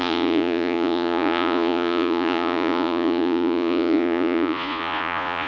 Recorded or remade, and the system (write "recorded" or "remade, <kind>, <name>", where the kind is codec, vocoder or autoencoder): remade, vocoder, Vocos